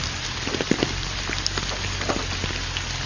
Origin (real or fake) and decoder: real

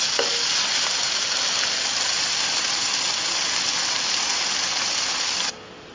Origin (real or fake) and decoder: real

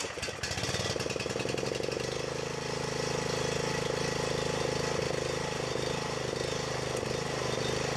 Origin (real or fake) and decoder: real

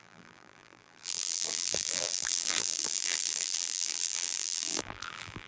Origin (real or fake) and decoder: fake, vocoder, BigVGAN v2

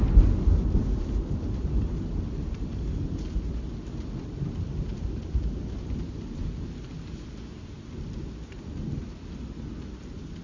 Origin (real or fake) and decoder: real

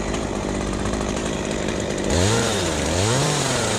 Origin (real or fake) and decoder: fake, vocoder, BigVGAN v2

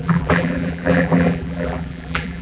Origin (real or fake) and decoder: fake, vocoder, BigVGAN v2